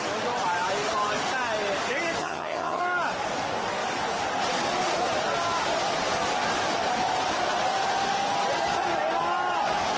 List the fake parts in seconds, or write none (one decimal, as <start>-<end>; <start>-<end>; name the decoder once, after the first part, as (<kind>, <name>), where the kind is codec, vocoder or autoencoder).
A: 2.2-2.8 (vocoder, HiFi-GAN)